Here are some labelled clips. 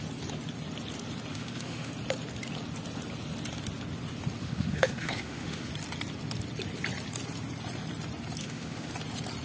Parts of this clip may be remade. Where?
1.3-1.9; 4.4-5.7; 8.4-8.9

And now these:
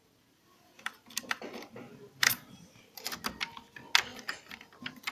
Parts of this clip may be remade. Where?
0.0-3.0

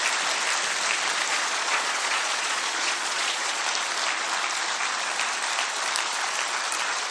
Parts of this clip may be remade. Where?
1.3-3.6

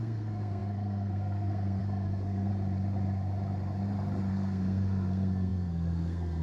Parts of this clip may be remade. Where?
0.0-2.5; 4.3-6.4